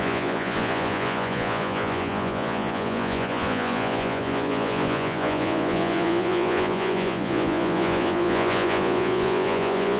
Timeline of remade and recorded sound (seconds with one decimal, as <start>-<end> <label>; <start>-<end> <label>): 0.0-10.0 remade